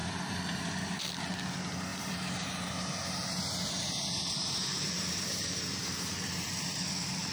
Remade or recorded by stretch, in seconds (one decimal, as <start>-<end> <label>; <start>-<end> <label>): 0.0-0.7 remade; 0.7-1.9 recorded; 1.9-6.1 remade; 6.1-7.3 recorded